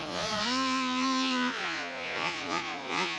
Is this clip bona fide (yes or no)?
no